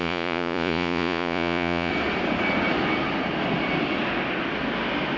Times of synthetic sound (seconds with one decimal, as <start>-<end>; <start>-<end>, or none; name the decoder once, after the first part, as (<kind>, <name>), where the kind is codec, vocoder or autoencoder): 0.0-1.9 (vocoder, Vocos)